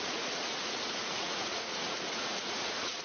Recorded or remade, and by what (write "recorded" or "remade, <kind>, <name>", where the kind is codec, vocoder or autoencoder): remade, vocoder, Vocos